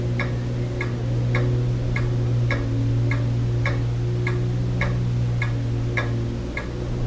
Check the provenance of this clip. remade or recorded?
recorded